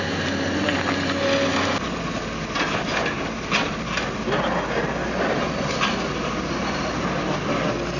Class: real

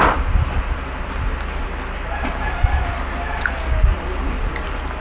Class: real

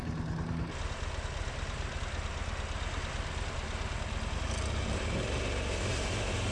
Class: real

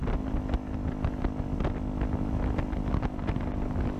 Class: real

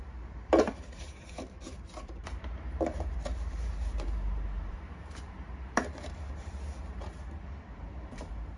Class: fake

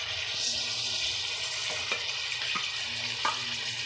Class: real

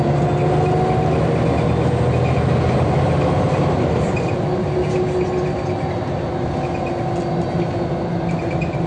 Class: real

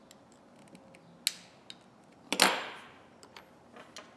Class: real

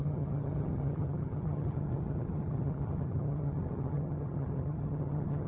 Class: fake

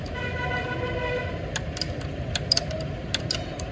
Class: real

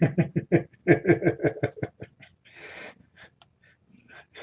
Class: real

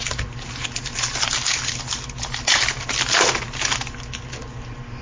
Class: real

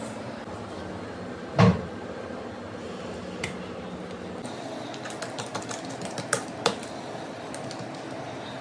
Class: real